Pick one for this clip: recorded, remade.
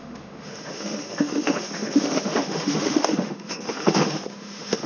remade